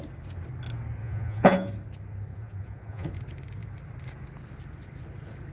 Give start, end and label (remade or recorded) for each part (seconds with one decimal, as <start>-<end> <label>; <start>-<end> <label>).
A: 0.0-1.0 recorded; 1.0-1.7 remade; 1.7-2.3 recorded; 2.3-3.1 remade; 3.1-5.5 recorded